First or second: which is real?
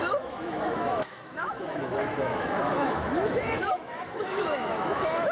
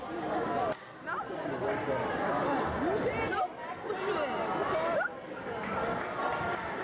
second